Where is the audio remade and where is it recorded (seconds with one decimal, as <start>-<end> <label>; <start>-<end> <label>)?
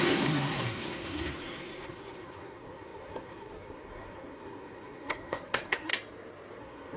0.0-5.9 remade; 5.9-6.6 recorded; 6.6-7.0 remade